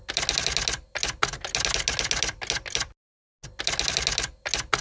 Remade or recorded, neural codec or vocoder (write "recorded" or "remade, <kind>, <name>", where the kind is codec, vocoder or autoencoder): recorded